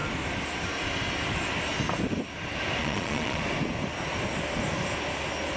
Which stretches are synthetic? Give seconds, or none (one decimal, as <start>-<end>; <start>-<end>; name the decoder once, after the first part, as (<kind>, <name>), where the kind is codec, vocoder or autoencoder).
2.8-3.4 (vocoder, Vocos)